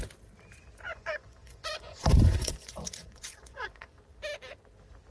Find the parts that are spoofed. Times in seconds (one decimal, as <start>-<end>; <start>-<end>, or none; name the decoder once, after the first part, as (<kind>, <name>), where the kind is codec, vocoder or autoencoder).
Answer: 0.9-4.0 (vocoder, Vocos)

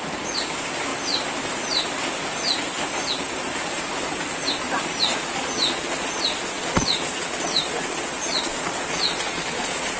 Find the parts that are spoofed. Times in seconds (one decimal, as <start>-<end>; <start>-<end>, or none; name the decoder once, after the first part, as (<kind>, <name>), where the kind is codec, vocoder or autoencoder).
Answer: 5.1-10.0 (vocoder, Vocos)

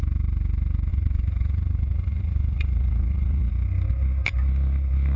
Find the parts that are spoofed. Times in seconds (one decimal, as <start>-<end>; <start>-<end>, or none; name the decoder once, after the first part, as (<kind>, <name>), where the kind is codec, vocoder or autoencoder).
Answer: 0.9-3.5 (vocoder, Vocos)

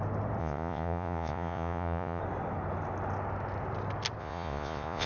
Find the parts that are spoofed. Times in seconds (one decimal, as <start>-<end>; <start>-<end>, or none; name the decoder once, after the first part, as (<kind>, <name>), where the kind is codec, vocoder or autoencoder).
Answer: 0.4-2.2 (vocoder, Vocos); 4.2-5.1

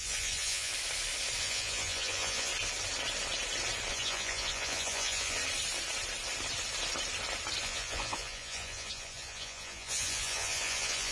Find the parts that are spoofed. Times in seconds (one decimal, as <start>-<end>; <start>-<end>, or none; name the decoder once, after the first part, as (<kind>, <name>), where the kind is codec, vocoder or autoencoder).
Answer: 0.0-0.7 (vocoder, Vocos); 1.4-2.5; 3.9-5.4; 7.6-11.1